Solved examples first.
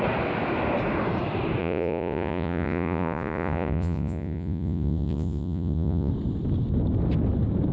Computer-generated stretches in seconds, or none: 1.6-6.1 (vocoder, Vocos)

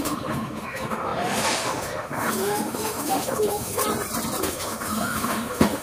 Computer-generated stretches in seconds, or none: 0.0-3.8 (autoencoder, DAC-VAE); 4.4-5.8

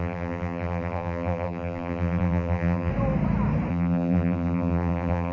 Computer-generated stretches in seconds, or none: 0.0-2.9 (vocoder, BigVGAN v2); 3.7-5.3

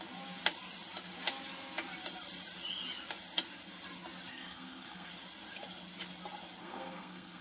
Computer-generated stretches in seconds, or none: 4.3-5.1 (codec, SNAC); 6.6-7.4

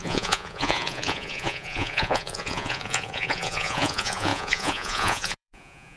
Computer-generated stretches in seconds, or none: 0.0-6.0 (vocoder, Vocos)